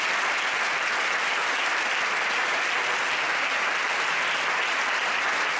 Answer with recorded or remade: recorded